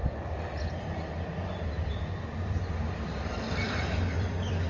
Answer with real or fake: fake